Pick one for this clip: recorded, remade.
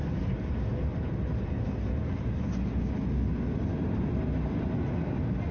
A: recorded